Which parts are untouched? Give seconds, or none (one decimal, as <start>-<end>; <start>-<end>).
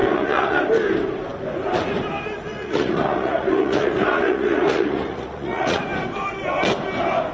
0.6-2.5; 5.8-7.3